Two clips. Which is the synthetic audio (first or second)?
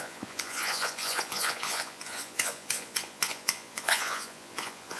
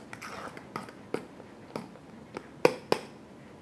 first